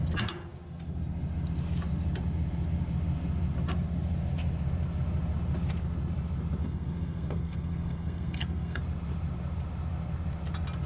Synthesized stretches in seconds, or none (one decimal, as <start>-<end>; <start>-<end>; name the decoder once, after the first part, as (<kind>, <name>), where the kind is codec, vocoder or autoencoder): 6.6-8.8 (codec, SNAC)